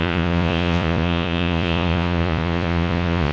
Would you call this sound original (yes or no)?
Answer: no